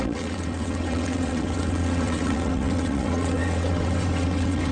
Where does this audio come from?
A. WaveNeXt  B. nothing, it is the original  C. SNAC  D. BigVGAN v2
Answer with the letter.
A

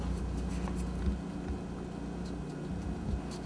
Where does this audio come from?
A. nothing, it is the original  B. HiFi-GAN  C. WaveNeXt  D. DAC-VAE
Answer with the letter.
A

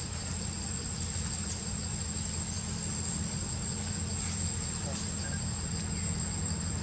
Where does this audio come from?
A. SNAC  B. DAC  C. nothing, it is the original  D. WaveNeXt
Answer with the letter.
C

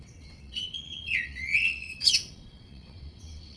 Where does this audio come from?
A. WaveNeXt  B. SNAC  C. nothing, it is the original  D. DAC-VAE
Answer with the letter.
A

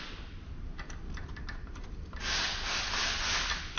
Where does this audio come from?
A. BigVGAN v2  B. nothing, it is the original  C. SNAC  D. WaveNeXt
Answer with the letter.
B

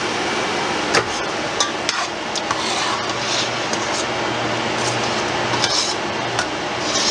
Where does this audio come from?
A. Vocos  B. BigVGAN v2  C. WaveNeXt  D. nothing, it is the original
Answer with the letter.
D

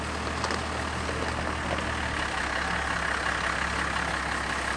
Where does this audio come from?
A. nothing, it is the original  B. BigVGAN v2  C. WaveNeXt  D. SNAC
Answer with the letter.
A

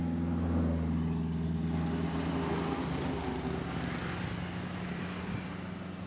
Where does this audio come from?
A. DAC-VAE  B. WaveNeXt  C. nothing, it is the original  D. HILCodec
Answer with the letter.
C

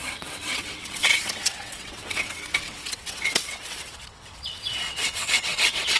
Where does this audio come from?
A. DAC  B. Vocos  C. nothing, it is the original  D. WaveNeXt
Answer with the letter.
D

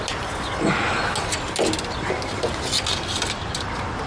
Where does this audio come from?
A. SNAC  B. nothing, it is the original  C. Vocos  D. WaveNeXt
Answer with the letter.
B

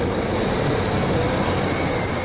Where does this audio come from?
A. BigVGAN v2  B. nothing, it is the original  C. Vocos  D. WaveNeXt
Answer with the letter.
B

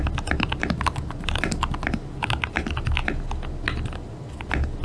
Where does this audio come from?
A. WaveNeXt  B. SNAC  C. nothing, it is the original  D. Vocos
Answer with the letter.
C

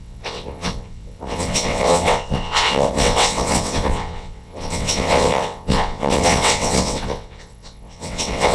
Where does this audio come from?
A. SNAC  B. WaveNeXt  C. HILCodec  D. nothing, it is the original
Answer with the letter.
B